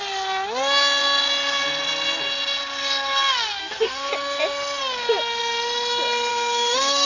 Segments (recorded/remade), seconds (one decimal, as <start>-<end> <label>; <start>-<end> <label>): 0.0-3.6 recorded; 3.6-4.1 remade; 4.1-6.3 recorded; 6.3-7.1 remade